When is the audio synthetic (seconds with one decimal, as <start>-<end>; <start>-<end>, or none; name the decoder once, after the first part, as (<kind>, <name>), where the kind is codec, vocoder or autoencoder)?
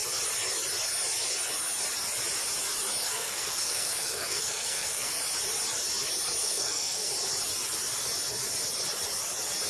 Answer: 3.0-5.1 (codec, SNAC); 6.4-7.1